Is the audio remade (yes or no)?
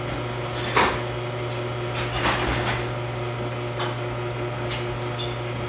no